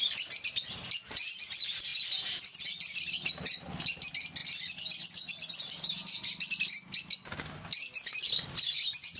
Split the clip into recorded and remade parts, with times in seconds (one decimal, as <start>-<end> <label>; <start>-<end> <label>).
0.0-9.2 recorded